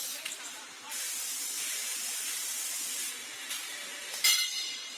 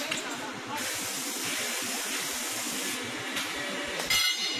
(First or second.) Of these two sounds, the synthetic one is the first